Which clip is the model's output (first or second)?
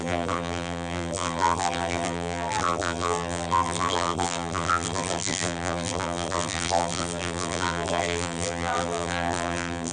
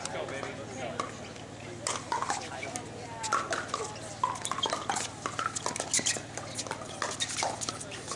first